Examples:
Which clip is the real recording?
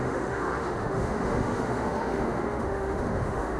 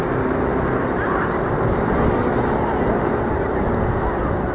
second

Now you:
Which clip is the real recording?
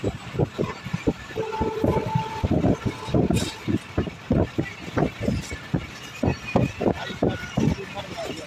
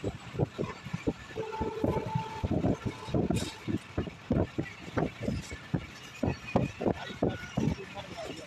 first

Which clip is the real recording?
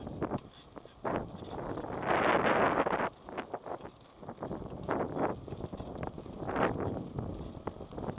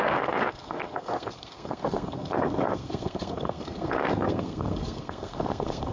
first